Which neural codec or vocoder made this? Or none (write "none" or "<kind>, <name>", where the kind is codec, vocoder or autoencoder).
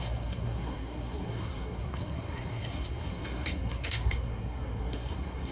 codec, SNAC